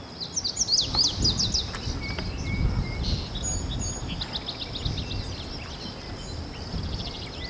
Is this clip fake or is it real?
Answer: real